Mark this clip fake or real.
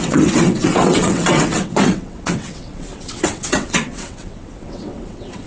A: fake